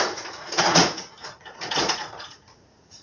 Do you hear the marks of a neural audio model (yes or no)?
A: yes